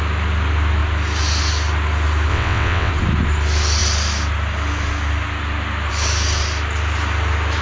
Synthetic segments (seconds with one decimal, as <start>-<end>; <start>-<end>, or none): 2.3-2.9